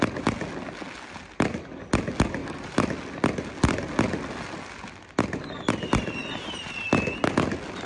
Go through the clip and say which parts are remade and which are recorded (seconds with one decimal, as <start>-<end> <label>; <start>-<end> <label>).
0.0-2.4 recorded; 2.4-2.9 remade; 2.9-6.2 recorded; 6.2-6.9 remade; 6.9-7.9 recorded